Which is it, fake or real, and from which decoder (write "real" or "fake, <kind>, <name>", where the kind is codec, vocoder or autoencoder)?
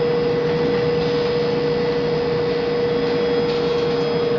real